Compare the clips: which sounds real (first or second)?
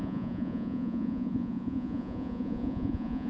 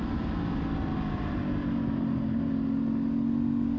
second